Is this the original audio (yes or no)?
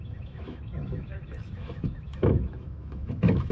no